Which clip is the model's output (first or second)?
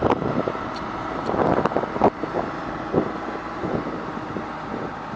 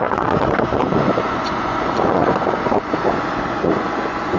second